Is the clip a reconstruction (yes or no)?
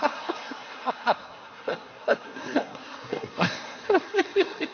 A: yes